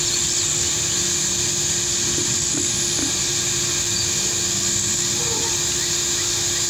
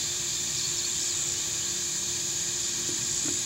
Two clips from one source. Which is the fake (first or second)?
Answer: second